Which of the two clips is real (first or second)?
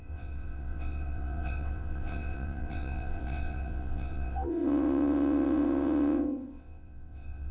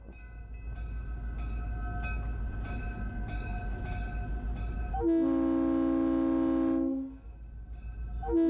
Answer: second